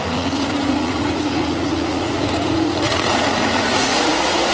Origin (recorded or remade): remade